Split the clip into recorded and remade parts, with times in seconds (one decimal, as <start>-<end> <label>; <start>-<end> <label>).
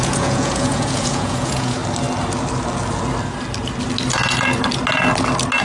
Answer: 0.0-1.8 remade; 1.8-5.6 recorded